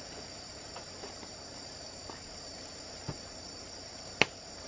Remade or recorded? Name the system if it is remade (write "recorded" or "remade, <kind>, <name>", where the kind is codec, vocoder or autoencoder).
recorded